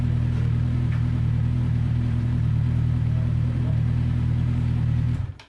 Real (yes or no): no